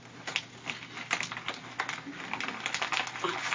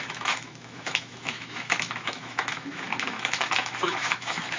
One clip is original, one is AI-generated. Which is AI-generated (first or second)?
second